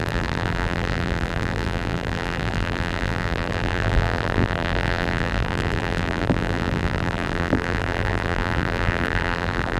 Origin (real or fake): fake